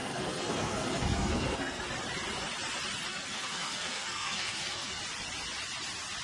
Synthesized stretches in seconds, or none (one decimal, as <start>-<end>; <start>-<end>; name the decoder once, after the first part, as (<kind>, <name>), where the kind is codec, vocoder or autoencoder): 0.0-1.8 (codec, SNAC); 3.1-5.0